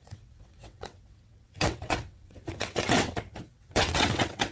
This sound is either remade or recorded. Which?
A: remade